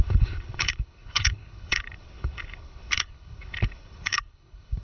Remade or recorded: remade